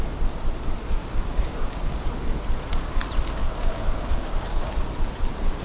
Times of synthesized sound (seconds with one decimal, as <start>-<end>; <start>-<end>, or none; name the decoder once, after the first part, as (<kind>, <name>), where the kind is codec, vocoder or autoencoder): 1.0-2.1 (codec, DAC); 3.4-4.7